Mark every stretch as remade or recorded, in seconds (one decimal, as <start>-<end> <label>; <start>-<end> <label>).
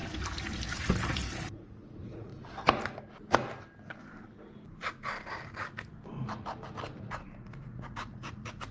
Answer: 0.0-1.4 recorded; 1.4-2.3 remade; 2.3-7.0 recorded; 7.0-8.7 remade